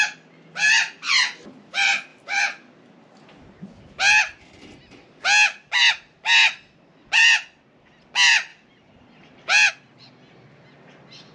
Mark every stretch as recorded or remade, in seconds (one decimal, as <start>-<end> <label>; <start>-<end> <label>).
0.0-8.5 recorded; 8.5-9.7 remade; 9.7-11.3 recorded